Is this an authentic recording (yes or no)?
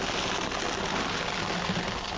yes